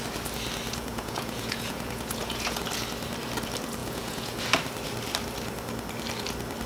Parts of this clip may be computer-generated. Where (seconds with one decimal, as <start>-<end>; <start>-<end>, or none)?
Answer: 0.7-2.6; 3.8-4.4